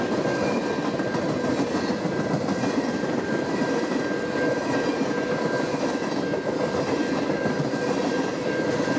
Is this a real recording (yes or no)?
yes